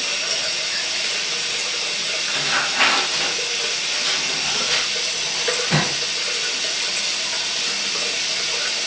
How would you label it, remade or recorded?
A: recorded